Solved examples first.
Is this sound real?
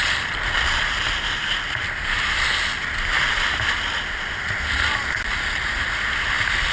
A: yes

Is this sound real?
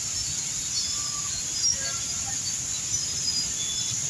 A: yes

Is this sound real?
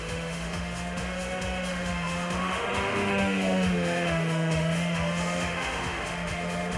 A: no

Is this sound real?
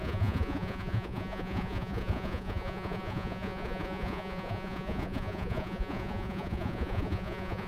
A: no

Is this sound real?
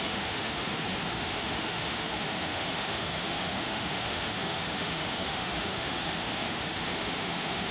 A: no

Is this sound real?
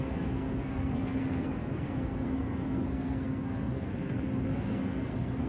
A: no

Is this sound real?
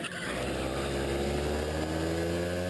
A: yes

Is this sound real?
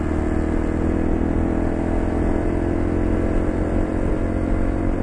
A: yes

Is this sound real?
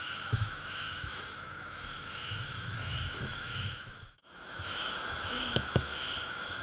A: no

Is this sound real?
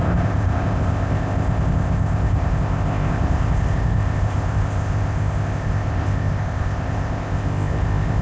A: no